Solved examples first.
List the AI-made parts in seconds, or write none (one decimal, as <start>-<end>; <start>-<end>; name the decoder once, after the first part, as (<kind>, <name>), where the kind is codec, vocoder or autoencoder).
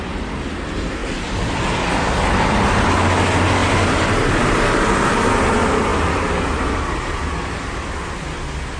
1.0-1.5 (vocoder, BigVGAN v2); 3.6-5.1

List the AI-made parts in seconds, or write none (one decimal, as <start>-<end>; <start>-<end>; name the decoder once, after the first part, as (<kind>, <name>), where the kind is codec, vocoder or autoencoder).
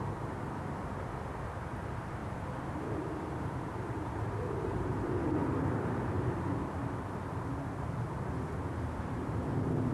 0.0-9.9 (vocoder, BigVGAN v2)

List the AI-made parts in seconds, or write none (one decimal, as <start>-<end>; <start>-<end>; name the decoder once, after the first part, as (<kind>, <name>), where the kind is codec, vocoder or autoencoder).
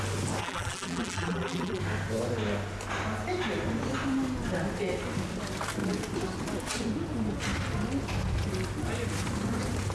0.4-1.8 (vocoder, BigVGAN v2)